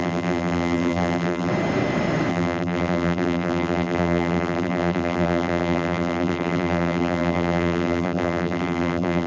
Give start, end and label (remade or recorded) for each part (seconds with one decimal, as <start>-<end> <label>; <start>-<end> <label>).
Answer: 0.0-1.5 remade; 1.5-2.3 recorded; 2.3-9.3 remade